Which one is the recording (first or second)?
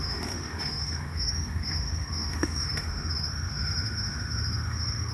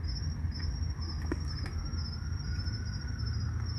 second